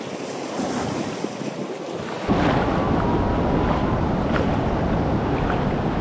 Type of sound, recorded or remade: recorded